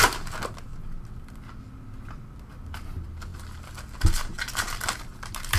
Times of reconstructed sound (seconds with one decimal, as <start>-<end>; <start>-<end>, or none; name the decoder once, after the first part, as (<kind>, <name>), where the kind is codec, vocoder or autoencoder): 0.0-0.7 (vocoder, BigVGAN v2); 2.5-3.3; 4.6-5.6